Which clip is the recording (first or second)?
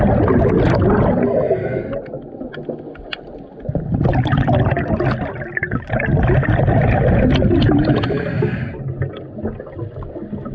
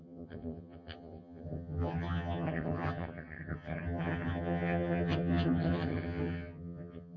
first